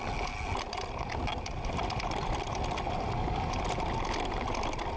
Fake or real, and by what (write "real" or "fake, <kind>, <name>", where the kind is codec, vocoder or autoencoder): real